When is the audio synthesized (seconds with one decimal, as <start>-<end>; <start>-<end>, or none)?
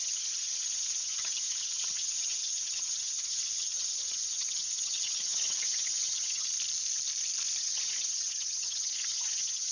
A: 0.0-6.5; 7.6-9.7